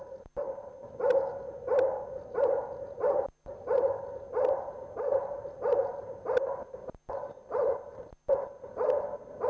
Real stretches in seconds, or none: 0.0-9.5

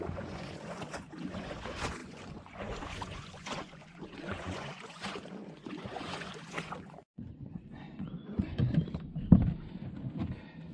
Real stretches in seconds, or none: 8.6-10.7

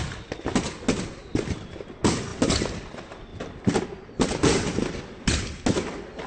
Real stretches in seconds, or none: 0.0-6.3

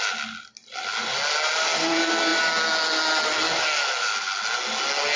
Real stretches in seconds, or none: 0.0-5.2

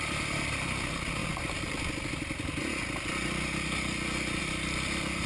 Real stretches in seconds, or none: 0.0-5.3